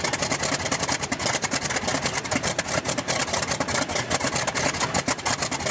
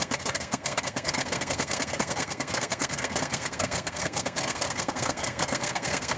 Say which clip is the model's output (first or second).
second